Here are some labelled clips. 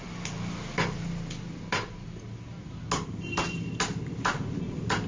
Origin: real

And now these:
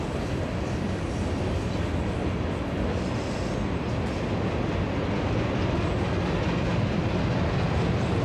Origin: real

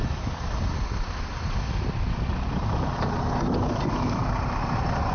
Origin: real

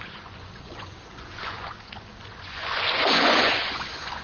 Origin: fake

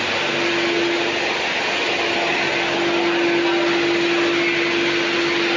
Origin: real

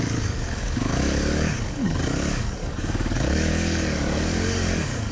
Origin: fake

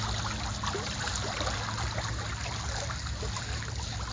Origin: real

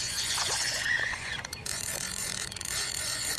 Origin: fake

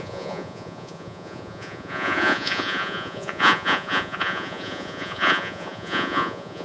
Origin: fake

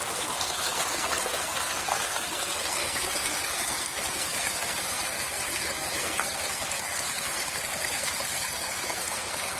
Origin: fake